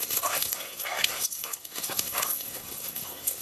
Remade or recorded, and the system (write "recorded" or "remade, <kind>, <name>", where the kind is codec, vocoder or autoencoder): remade, codec, SNAC